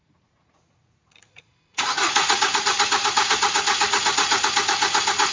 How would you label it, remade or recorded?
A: remade